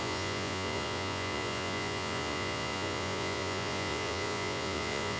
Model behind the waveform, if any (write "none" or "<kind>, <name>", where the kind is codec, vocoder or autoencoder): vocoder, Vocos